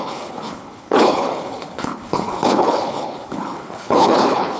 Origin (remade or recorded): remade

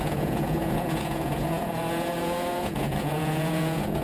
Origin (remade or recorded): remade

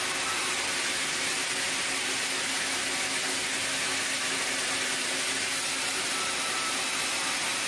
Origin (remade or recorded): recorded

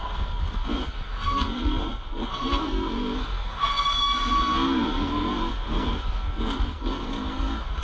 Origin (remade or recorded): remade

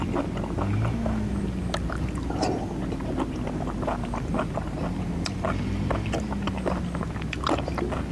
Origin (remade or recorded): recorded